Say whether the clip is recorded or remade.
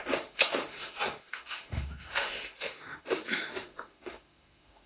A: remade